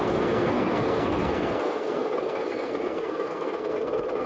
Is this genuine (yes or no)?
no